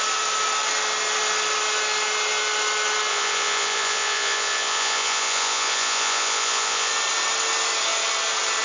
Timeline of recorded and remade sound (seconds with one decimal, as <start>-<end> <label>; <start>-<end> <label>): 0.0-3.1 recorded; 3.1-6.9 remade; 6.9-8.6 recorded